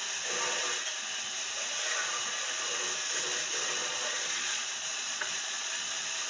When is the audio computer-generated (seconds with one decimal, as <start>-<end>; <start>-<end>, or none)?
3.8-5.7